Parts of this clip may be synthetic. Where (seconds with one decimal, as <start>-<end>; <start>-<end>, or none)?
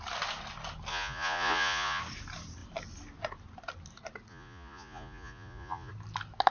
0.9-2.0; 4.3-5.9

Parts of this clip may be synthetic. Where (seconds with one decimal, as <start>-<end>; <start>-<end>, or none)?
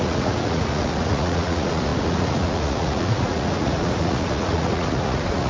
0.0-5.5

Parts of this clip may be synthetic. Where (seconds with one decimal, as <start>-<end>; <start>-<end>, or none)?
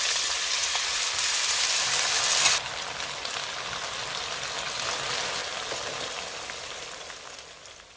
none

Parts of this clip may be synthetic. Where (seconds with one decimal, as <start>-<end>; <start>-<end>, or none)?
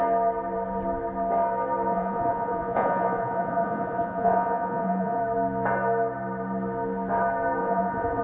1.9-5.2; 7.6-8.2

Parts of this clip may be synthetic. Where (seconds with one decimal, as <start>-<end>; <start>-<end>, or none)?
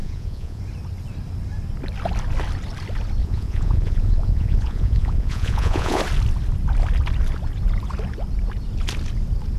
0.0-0.6; 3.2-6.0